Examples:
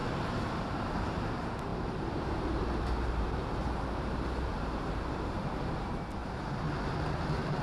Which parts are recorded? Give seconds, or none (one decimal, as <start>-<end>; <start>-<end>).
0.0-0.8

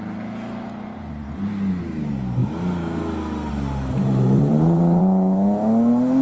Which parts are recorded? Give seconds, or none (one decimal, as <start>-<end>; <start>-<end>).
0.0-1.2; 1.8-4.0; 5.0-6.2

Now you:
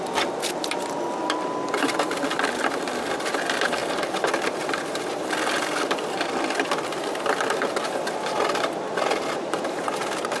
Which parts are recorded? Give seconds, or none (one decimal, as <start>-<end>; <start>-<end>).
none

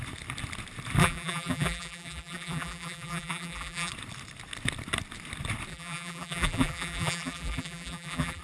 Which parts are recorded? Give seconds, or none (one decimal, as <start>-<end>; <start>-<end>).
0.0-1.0; 3.9-5.7

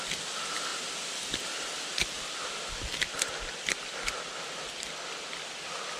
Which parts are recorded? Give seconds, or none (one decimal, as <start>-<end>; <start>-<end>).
0.0-6.0

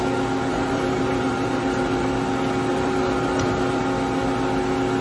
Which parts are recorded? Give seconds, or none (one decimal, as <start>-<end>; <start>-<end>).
0.0-0.5; 2.1-2.7; 3.8-5.0